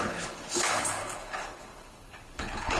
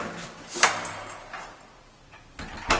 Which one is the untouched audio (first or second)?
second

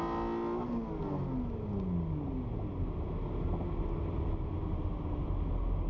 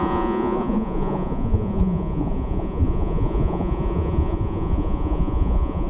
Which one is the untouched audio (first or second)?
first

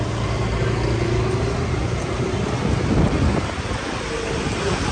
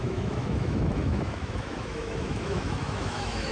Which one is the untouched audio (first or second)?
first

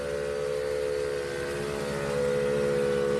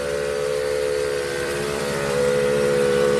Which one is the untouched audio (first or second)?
first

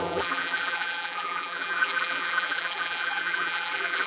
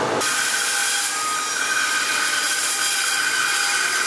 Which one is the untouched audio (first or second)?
second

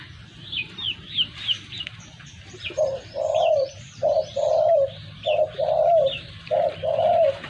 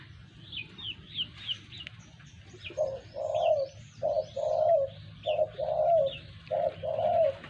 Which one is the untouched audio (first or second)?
second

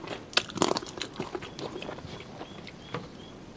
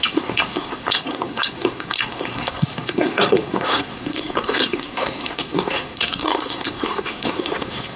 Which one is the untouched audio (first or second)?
first